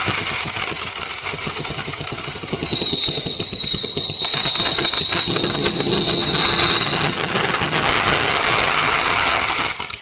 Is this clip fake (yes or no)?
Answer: yes